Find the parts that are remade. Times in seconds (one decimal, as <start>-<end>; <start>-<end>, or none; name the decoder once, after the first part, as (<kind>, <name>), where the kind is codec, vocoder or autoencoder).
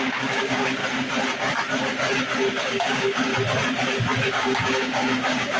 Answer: 0.0-0.8 (codec, DAC); 2.6-3.3; 4.3-5.6